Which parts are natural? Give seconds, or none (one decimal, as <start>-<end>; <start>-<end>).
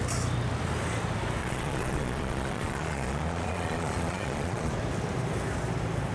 0.0-1.4; 4.7-6.1